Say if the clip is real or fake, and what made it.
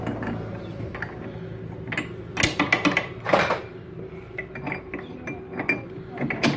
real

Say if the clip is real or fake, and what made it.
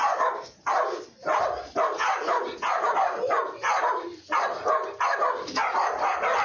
real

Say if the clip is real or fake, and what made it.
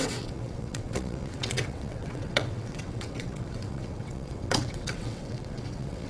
fake, vocoder, WaveNeXt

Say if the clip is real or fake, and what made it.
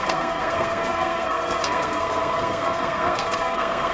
fake, codec, SNAC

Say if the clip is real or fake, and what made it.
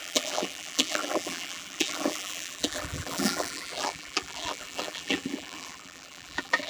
fake, vocoder, BigVGAN v2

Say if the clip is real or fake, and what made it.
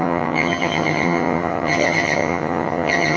fake, vocoder, HiFi-GAN